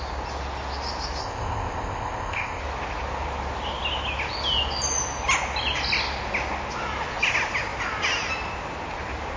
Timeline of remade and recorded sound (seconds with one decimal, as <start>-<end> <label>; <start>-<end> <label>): 0.0-1.2 recorded; 1.2-2.6 remade; 2.6-9.4 recorded